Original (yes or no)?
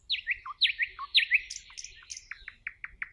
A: yes